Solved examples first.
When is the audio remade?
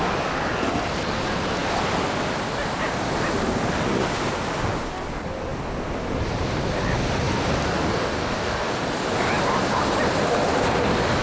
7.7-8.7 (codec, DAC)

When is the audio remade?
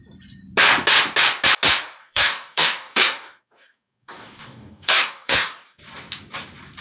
2.0-5.8 (codec, DAC)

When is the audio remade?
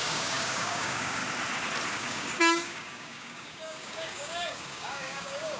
0.0-1.2 (codec, DAC); 1.9-5.6